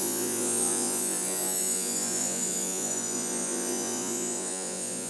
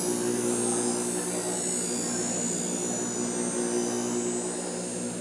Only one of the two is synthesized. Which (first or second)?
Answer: first